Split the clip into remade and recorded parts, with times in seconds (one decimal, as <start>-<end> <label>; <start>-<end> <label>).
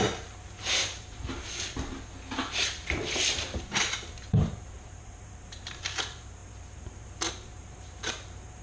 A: 0.0-1.2 remade; 1.2-3.6 recorded; 3.6-6.4 remade; 6.4-7.3 recorded; 7.3-8.6 remade